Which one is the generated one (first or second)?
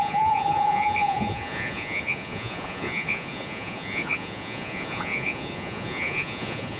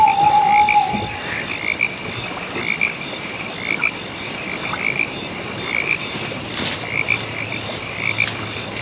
first